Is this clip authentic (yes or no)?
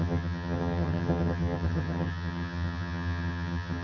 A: no